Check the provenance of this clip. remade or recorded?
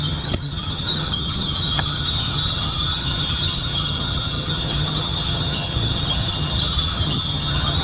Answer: remade